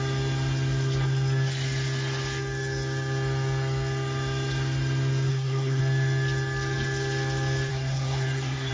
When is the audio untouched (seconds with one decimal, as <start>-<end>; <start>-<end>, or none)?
0.0-5.3; 5.8-7.7